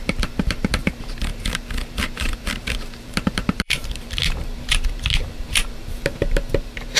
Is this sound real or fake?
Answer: fake